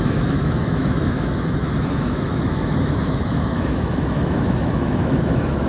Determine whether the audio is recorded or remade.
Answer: remade